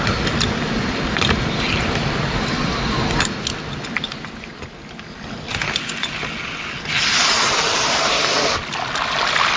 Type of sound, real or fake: real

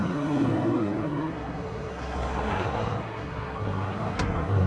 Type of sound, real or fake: fake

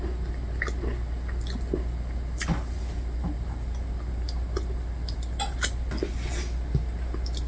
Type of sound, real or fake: real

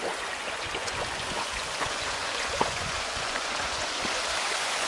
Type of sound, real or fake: fake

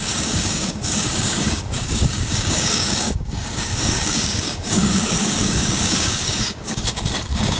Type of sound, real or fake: fake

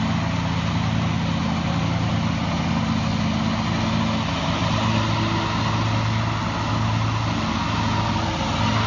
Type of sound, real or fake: real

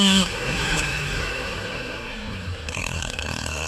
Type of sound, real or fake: fake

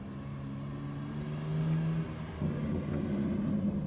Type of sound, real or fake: real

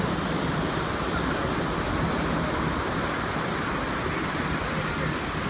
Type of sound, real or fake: real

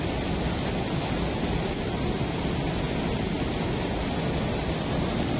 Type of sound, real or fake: real